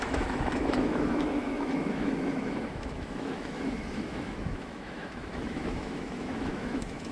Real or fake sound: fake